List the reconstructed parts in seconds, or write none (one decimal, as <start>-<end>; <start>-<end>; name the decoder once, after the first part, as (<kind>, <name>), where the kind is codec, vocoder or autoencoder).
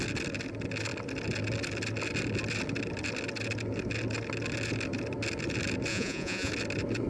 5.9-6.5 (vocoder, Vocos)